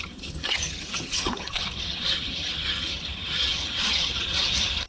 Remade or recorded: remade